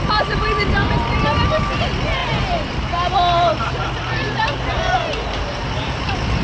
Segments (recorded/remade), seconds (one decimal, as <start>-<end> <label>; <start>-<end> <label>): 0.0-0.8 recorded; 0.8-1.6 remade; 1.6-2.2 recorded; 2.2-6.0 remade; 6.0-6.4 recorded